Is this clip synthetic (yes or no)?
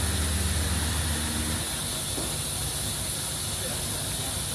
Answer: no